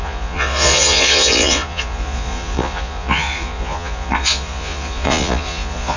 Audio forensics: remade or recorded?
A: remade